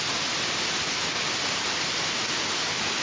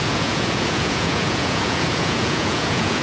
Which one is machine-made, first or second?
second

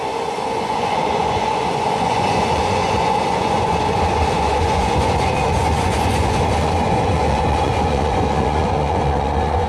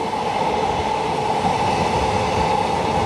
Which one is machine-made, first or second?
first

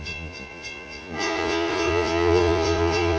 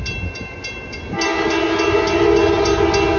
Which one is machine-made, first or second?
first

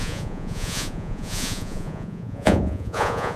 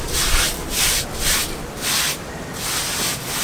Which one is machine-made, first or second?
first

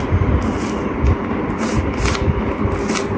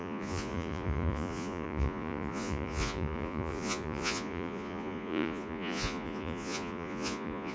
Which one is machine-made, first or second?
second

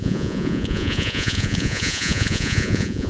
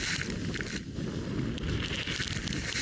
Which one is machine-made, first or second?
first